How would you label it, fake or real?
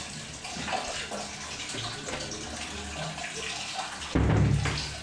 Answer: real